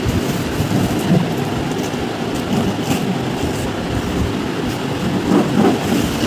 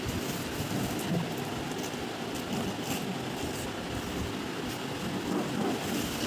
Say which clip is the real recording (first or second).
second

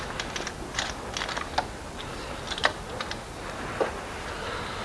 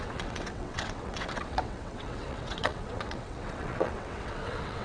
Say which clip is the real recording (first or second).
first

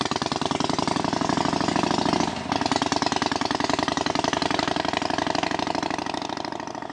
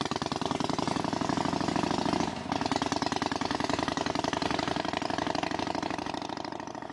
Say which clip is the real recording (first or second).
first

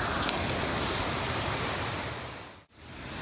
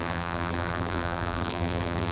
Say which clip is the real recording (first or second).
first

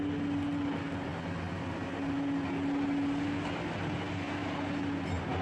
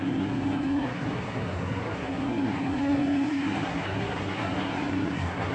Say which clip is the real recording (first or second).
first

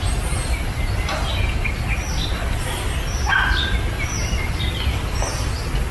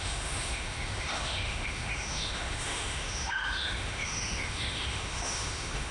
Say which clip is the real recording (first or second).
first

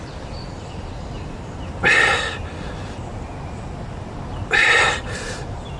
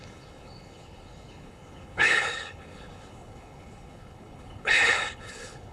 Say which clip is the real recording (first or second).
first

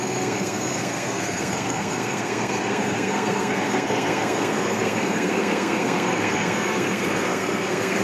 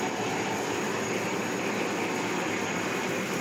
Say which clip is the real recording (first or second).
second